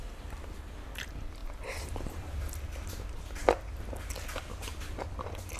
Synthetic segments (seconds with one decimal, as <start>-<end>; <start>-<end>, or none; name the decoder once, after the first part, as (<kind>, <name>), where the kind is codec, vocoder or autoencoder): none